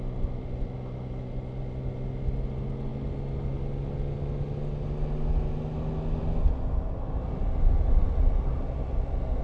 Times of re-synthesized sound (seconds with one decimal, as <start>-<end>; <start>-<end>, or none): none